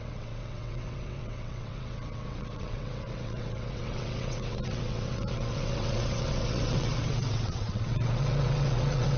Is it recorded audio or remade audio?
remade